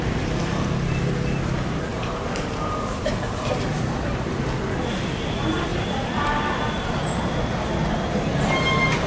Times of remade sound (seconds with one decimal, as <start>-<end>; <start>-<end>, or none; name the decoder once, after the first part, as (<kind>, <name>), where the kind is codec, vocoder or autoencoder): 1.9-4.3 (vocoder, BigVGAN v2); 5.7-6.3